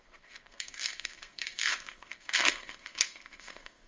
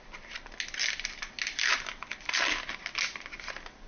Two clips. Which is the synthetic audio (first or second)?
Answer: first